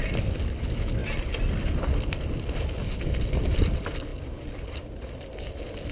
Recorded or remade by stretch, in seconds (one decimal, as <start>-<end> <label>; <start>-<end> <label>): 0.0-5.9 recorded